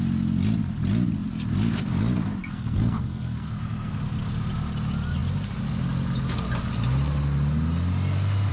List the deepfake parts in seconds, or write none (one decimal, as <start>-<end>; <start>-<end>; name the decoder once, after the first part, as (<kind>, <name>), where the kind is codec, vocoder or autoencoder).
2.4-4.0 (codec, SNAC)